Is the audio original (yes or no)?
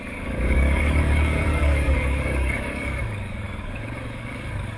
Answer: no